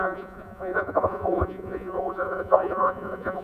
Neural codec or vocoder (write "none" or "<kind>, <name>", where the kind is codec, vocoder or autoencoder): vocoder, Vocos